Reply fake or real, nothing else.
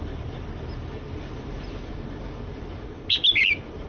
real